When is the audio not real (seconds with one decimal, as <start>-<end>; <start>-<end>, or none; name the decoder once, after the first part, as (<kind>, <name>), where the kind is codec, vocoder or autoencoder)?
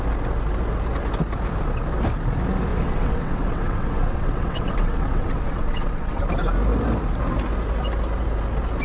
2.7-6.2 (vocoder, WaveNeXt)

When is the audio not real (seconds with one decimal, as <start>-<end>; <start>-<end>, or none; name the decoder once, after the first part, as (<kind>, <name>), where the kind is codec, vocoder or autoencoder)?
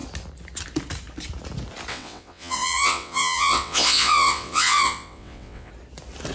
1.9-5.7 (vocoder, WaveNeXt)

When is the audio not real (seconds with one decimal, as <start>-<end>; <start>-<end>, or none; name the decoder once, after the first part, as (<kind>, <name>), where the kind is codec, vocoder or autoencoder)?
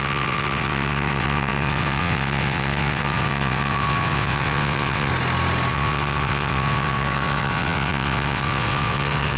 0.0-5.1 (vocoder, WaveNeXt); 5.7-9.4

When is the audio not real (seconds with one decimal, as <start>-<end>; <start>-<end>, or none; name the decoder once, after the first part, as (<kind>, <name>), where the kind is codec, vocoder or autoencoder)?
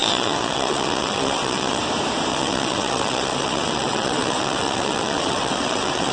0.0-1.8 (vocoder, WaveNeXt); 2.3-6.1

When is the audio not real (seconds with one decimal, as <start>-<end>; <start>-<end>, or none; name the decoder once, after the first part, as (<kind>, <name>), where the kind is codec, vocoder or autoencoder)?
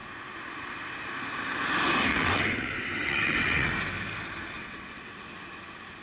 2.1-3.7 (vocoder, WaveNeXt); 4.6-5.2